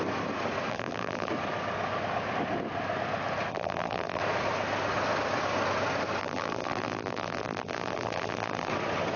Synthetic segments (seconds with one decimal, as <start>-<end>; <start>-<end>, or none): 0.7-1.3; 3.5-4.2; 6.2-8.7